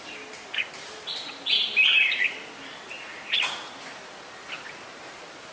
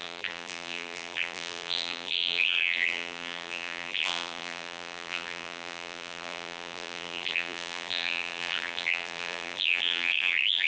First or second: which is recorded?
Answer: first